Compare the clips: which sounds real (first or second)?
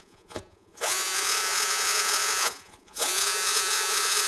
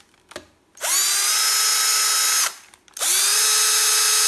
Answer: second